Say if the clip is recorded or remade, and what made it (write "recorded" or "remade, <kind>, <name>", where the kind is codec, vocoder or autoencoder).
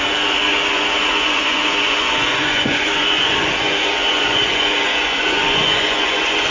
remade, vocoder, Vocos